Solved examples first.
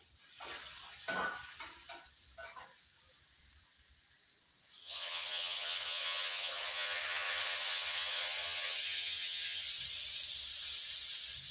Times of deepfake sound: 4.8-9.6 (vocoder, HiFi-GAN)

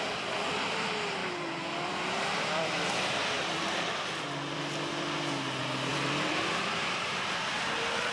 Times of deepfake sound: 1.2-4.6 (vocoder, BigVGAN v2); 5.9-7.4